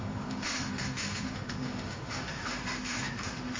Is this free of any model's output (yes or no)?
no